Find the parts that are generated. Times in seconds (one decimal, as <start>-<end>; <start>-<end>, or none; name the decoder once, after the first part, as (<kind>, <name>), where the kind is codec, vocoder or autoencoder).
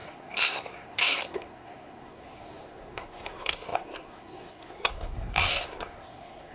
0.0-6.5 (codec, SNAC)